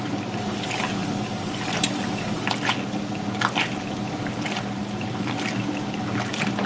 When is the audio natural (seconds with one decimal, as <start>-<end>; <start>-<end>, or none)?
0.0-6.7